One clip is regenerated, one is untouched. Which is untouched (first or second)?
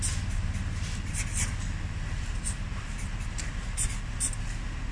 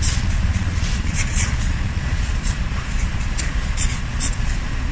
first